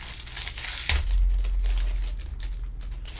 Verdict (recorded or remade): recorded